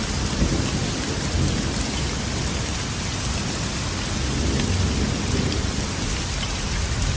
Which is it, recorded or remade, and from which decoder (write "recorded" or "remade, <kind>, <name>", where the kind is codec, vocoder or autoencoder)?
recorded